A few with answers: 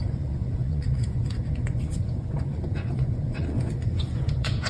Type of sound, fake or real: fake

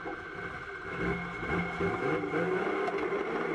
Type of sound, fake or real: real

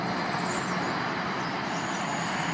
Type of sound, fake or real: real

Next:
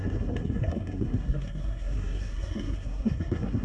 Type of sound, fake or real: fake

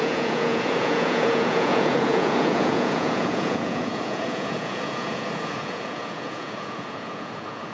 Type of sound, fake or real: fake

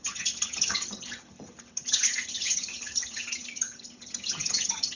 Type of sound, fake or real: fake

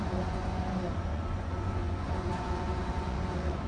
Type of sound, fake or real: fake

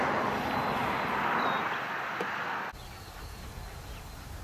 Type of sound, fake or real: real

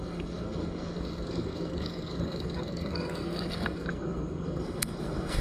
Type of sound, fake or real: fake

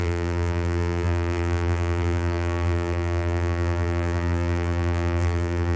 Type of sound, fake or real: fake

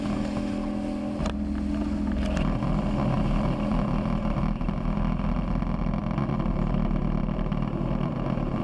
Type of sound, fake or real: real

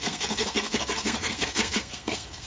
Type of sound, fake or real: fake